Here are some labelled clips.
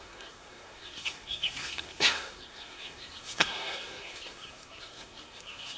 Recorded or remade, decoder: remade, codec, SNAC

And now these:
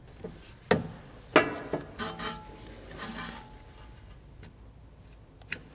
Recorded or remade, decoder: recorded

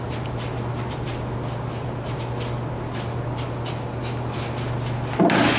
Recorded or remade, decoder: recorded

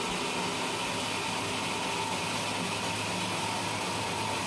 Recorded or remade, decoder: recorded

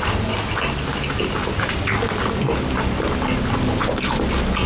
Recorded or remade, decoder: recorded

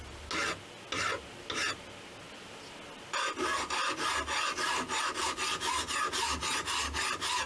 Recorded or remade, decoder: recorded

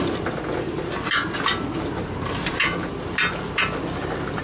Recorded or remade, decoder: recorded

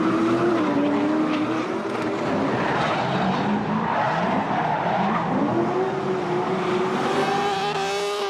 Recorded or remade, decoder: recorded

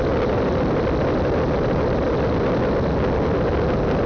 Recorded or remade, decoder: recorded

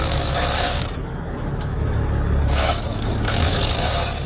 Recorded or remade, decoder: remade, codec, DAC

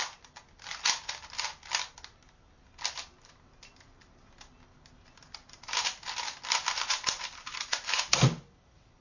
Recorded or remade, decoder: recorded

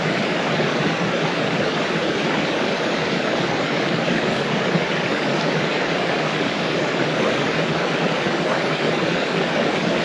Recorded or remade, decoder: remade, codec, DAC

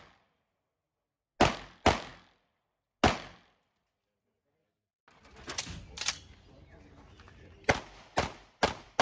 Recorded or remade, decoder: recorded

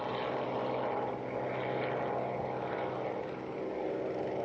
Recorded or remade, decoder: recorded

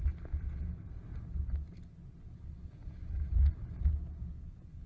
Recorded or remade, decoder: recorded